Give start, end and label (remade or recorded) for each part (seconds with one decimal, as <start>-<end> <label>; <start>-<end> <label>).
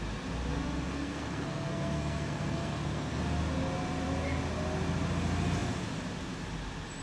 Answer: 0.0-0.5 recorded; 0.5-3.2 remade; 3.2-7.0 recorded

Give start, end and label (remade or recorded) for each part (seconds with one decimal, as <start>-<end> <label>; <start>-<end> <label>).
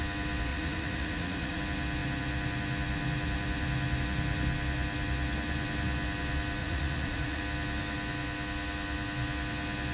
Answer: 0.0-0.5 recorded; 0.5-1.6 remade; 1.6-6.6 recorded; 6.6-7.4 remade; 7.4-9.9 recorded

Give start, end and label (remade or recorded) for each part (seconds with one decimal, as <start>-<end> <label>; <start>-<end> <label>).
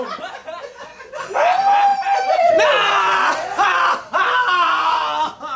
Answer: 0.0-5.6 recorded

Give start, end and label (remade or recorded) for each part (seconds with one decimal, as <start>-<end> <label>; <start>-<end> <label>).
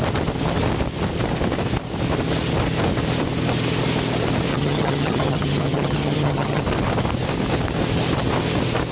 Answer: 0.0-4.5 recorded; 4.5-6.6 remade; 6.6-8.9 recorded